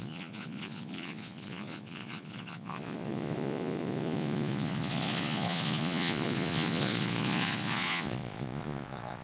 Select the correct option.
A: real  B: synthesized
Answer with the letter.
B